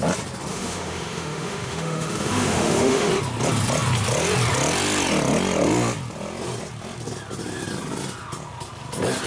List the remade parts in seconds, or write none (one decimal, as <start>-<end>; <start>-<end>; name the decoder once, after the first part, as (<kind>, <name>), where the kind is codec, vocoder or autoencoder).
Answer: 0.5-3.1 (autoencoder, DAC-VAE)

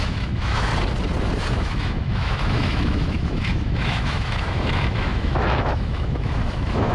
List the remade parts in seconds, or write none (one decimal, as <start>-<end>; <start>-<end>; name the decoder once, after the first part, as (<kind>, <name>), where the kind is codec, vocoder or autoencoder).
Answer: 0.0-0.7 (autoencoder, DAC-VAE); 1.5-6.9